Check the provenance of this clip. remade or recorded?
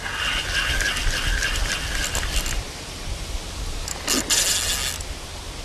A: recorded